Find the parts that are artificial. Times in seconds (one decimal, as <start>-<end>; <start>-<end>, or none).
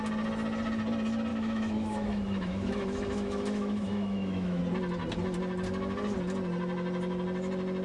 1.3-4.6